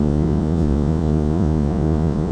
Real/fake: fake